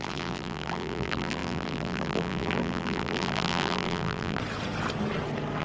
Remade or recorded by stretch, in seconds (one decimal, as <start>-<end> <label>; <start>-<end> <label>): 0.0-4.4 remade; 4.4-5.6 recorded